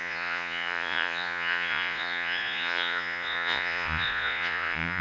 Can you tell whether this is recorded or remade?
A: remade